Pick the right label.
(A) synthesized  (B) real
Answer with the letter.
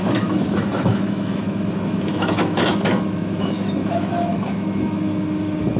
A